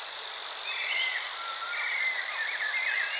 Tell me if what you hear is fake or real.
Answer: real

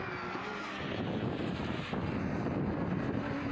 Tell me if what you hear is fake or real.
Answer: real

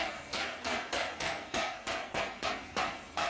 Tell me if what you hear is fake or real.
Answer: fake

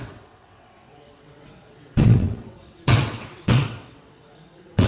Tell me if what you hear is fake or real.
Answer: fake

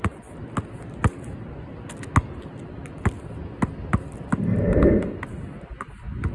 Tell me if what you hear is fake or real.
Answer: real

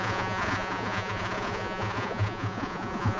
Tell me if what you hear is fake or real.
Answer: fake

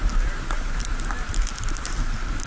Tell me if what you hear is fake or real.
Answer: real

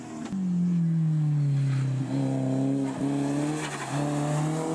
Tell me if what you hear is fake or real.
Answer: real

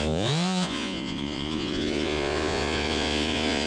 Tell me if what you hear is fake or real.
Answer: fake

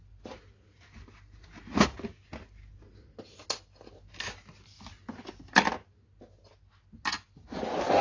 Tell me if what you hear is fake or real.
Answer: real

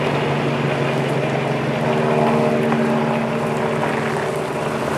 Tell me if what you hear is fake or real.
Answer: real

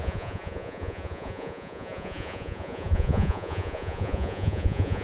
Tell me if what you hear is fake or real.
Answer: fake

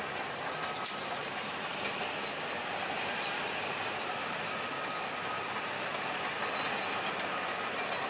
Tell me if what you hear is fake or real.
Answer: real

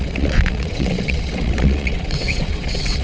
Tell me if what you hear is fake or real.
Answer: fake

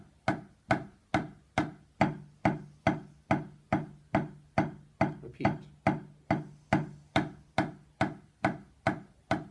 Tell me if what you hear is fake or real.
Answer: real